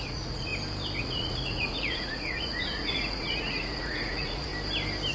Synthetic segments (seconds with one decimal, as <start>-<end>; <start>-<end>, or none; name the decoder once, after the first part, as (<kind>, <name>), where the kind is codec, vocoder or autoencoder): 0.0-0.5 (vocoder, Vocos); 1.0-4.5